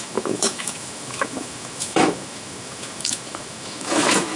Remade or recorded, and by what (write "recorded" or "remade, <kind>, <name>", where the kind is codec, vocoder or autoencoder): remade, autoencoder, DAC-VAE